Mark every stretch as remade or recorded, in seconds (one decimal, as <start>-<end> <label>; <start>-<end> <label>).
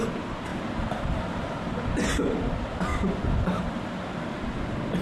0.0-2.9 recorded; 2.9-3.6 remade; 3.6-5.0 recorded